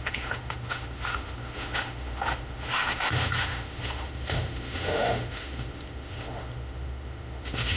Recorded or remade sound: remade